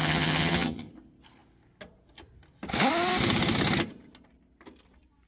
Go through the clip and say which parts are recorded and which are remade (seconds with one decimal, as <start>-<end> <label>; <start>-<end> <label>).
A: 0.0-0.9 remade; 0.9-5.3 recorded